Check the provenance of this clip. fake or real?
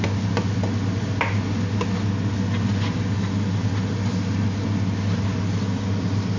real